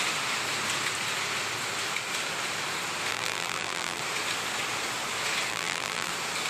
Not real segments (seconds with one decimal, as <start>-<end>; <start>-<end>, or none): 3.1-4.0; 5.5-6.1

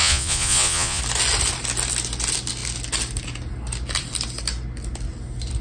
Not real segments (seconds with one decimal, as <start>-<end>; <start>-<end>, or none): 0.0-1.0

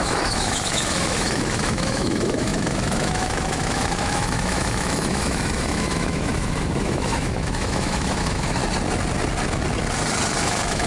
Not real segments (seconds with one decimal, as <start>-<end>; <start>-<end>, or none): 0.0-8.6; 10.4-10.9

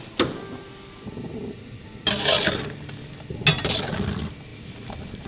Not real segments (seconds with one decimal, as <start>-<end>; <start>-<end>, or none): none